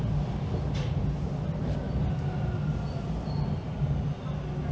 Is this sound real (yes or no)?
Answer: yes